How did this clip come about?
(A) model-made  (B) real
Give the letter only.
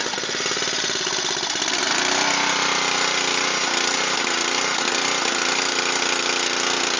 B